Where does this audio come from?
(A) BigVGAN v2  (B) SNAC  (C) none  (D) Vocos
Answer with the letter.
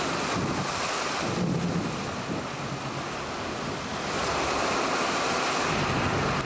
C